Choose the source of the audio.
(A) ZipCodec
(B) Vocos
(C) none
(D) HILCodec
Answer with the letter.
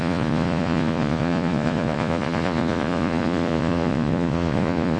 B